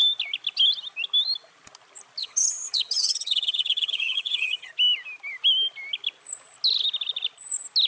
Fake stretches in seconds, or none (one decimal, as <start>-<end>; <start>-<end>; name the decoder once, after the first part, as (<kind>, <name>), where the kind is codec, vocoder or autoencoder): 2.2-4.7 (vocoder, HiFi-GAN)